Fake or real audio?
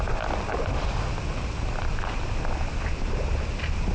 real